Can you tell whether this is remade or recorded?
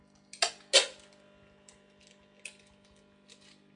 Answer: recorded